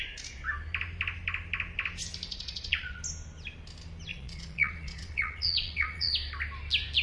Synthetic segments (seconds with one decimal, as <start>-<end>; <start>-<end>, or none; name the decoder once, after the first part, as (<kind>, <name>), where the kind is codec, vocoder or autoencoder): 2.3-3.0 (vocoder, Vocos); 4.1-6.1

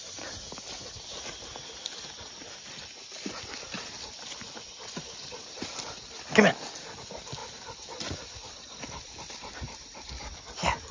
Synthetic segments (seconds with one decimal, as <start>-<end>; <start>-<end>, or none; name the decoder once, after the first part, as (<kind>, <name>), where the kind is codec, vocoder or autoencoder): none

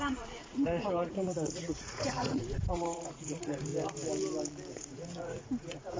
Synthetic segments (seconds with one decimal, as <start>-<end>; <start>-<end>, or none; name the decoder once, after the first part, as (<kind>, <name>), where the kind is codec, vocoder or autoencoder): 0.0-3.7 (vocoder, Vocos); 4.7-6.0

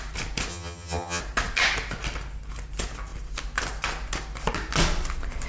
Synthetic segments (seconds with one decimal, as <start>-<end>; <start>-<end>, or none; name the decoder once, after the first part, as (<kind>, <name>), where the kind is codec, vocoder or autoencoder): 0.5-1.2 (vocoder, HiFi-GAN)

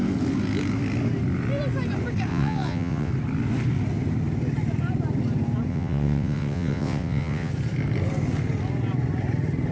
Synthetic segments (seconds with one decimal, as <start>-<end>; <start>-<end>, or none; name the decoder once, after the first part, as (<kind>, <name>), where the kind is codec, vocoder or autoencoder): 2.3-3.1 (vocoder, WaveNeXt); 5.7-7.5

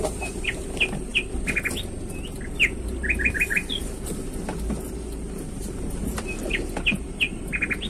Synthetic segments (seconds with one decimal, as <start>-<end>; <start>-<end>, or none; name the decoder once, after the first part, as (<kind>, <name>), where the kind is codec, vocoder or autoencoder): none

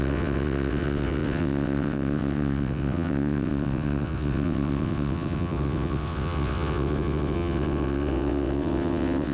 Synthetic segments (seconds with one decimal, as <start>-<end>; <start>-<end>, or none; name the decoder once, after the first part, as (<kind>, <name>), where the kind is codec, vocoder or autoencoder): 0.0-9.3 (vocoder, WaveNeXt)